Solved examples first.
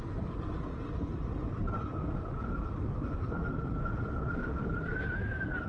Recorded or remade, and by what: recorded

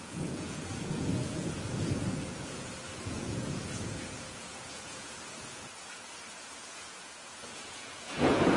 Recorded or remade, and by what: remade, vocoder, Vocos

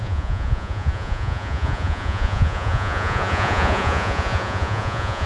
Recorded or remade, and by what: remade, vocoder, Vocos